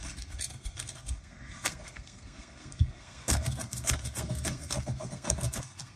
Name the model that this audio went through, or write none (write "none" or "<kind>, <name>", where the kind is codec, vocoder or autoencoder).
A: codec, SNAC